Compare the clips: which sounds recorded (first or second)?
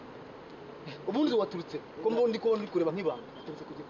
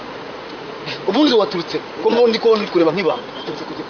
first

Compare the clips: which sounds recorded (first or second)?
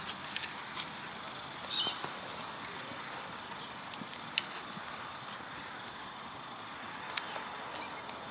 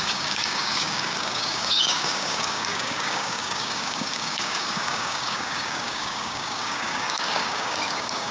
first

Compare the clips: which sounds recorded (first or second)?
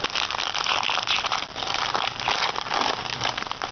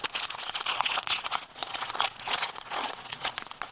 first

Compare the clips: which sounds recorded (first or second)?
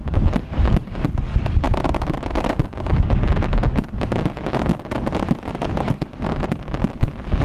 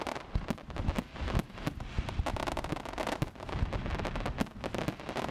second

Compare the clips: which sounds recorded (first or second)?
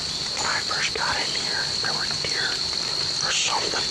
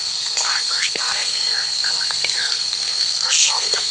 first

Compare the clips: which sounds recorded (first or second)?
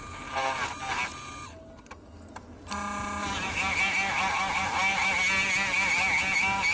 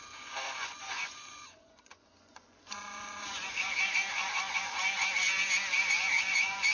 first